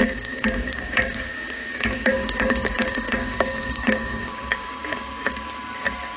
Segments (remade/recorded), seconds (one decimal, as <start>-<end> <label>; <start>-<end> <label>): 0.0-5.1 remade; 5.1-6.2 recorded